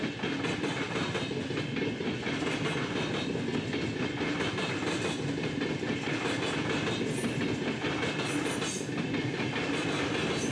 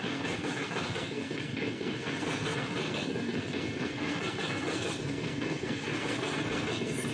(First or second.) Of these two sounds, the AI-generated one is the second